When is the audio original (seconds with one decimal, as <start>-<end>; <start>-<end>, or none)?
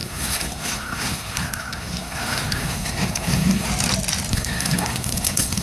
3.7-4.3